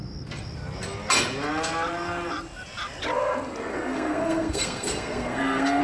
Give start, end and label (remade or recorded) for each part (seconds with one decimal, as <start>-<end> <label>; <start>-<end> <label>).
0.0-3.7 recorded; 3.7-5.8 remade